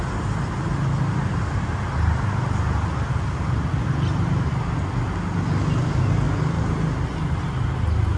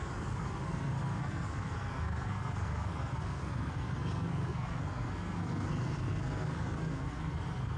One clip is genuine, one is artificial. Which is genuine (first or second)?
first